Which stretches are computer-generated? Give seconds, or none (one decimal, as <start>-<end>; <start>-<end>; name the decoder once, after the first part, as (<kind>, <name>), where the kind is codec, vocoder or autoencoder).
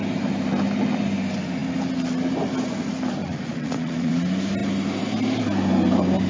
3.2-4.1 (vocoder, Vocos)